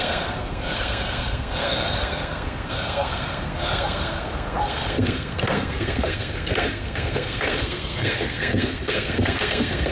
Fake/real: fake